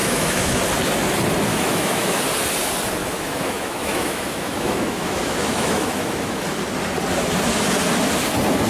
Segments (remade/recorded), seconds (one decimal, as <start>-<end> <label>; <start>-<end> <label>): 0.0-0.6 remade; 0.6-1.5 recorded; 1.5-2.2 remade; 2.2-3.0 recorded; 3.0-6.4 remade; 6.4-8.7 recorded